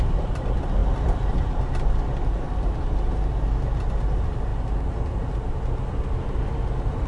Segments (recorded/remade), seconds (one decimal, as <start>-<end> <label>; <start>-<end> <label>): 0.0-0.8 recorded; 0.8-2.9 remade; 2.9-7.1 recorded